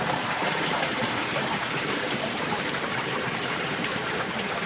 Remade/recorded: remade